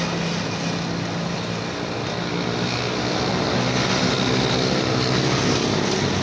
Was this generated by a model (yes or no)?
no